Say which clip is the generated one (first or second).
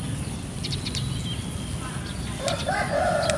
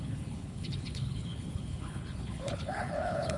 second